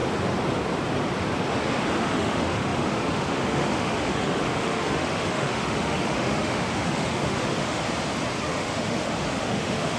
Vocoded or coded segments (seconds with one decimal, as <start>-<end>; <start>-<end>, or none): 2.0-7.8; 8.4-10.0